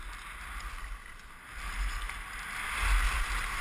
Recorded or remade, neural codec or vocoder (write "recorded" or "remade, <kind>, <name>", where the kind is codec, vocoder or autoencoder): recorded